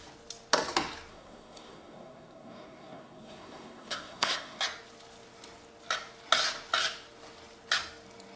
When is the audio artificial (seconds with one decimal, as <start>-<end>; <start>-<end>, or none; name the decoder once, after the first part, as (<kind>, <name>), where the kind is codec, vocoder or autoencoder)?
1.1-4.6 (codec, SNAC)